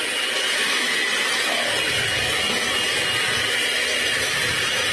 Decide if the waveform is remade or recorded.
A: recorded